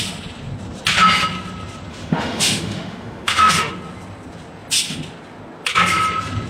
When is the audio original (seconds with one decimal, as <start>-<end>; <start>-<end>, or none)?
0.0-1.9; 3.7-6.5